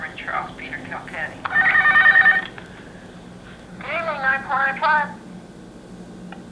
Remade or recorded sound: recorded